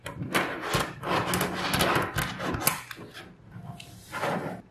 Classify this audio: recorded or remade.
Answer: recorded